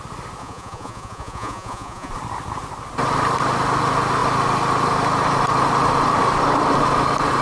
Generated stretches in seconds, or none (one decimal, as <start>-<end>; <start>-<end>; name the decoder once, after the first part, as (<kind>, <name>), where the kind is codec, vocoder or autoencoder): 0.4-2.1 (vocoder, Vocos)